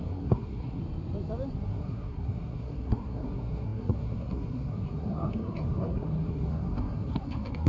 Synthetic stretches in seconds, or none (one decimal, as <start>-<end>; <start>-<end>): 0.0-0.8; 1.5-7.7